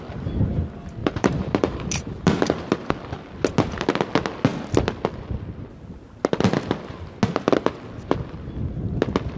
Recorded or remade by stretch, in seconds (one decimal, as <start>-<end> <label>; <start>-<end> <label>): 0.0-1.0 recorded; 1.0-2.9 remade; 2.9-9.4 recorded